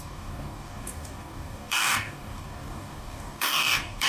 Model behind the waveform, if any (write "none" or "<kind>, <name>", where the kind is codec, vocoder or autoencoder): codec, DAC